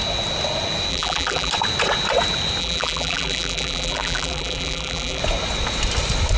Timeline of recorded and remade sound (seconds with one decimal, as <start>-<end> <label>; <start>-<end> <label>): 0.0-0.9 recorded; 0.9-1.5 remade; 1.5-2.6 recorded; 2.6-5.2 remade; 5.2-6.4 recorded